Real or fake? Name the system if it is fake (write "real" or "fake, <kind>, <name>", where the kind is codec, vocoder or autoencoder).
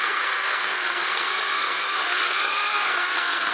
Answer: fake, codec, SNAC